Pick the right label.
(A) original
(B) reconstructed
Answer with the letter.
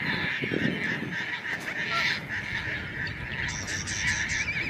A